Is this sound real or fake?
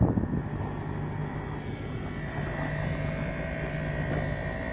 real